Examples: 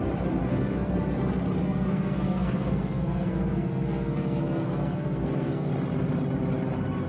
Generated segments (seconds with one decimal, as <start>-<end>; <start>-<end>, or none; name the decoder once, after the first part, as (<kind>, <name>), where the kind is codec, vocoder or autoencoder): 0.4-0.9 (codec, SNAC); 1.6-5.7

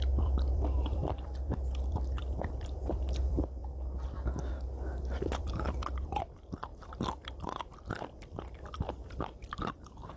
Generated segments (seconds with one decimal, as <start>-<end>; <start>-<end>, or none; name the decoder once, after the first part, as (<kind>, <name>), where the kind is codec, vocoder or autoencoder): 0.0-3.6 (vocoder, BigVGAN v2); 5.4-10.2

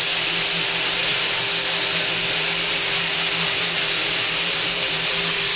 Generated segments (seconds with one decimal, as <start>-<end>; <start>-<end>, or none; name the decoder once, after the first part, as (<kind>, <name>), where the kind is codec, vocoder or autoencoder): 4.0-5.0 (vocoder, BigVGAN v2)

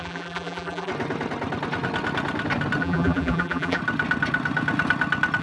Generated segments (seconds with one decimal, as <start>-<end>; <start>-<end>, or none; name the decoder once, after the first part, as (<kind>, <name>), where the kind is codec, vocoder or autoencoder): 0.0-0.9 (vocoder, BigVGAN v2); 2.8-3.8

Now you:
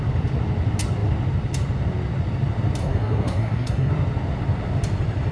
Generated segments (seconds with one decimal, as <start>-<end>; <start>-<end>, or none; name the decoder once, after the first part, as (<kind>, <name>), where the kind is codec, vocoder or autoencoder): 2.8-3.9 (codec, SNAC)